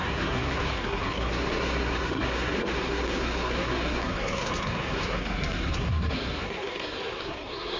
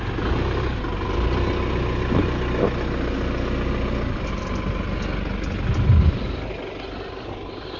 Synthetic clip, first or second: first